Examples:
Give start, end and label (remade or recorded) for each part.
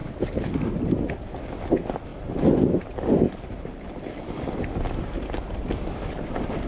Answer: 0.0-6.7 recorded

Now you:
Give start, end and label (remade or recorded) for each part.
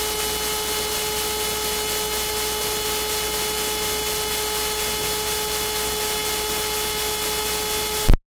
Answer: 0.0-8.4 recorded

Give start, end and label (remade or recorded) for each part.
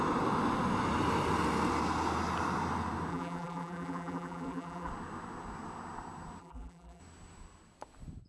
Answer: 0.0-3.1 recorded; 3.1-4.9 remade; 4.9-6.4 recorded; 6.4-7.0 remade; 7.0-8.3 recorded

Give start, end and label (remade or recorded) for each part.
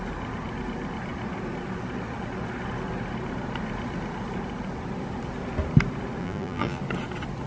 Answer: 0.0-6.2 recorded; 6.2-6.8 remade; 6.8-7.5 recorded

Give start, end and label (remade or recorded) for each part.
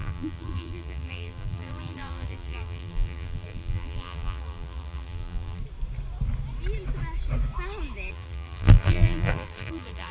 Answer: 0.0-5.6 remade; 5.6-8.1 recorded; 8.1-10.1 remade